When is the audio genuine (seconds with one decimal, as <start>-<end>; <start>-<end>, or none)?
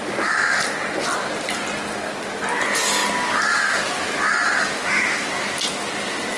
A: 0.0-6.4